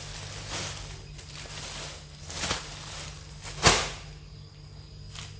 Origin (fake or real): real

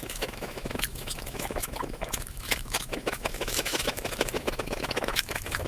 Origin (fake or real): fake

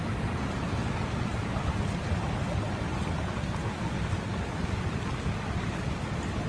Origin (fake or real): real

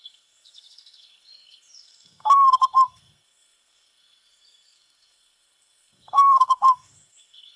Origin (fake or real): fake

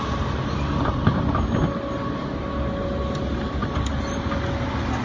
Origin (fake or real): real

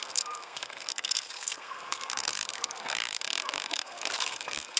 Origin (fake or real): fake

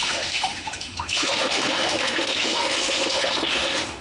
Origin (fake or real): fake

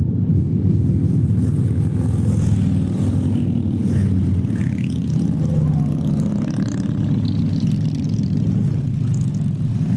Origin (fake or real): real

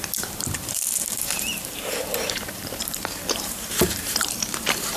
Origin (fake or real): fake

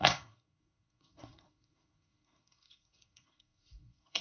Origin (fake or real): fake